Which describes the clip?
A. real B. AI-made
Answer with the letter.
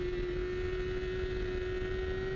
A